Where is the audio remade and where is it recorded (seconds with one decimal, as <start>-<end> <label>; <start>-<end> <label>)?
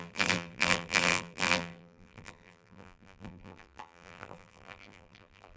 0.0-5.6 remade